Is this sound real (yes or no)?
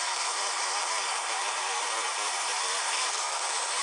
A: yes